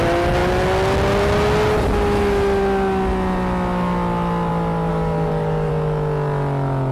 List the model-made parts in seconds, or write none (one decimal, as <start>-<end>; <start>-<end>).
4.9-5.7